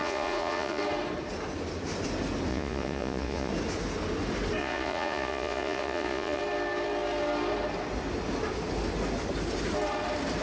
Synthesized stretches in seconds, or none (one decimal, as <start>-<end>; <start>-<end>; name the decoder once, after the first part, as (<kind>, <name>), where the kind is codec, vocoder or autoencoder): 0.0-0.8 (vocoder, Vocos); 2.5-3.5; 4.6-6.4